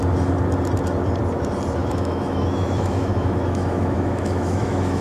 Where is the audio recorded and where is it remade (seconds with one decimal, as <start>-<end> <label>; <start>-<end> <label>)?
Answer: 0.0-1.8 recorded; 1.8-5.0 remade